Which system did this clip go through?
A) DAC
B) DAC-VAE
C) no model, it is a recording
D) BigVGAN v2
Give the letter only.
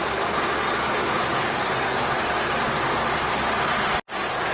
C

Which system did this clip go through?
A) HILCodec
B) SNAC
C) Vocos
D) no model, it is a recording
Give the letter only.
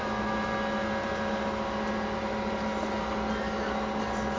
D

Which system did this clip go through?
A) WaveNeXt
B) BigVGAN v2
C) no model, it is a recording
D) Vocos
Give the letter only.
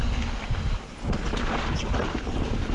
B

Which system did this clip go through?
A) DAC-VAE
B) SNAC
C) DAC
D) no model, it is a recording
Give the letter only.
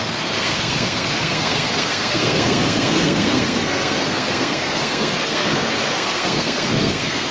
B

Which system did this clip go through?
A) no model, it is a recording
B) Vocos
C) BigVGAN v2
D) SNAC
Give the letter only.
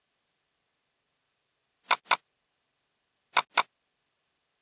A